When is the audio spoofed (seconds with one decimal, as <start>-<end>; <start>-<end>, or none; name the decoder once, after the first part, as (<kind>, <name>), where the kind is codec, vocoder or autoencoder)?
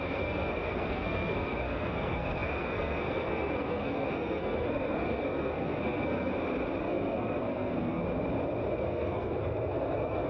0.0-6.3 (codec, SNAC); 6.8-8.0; 8.7-10.3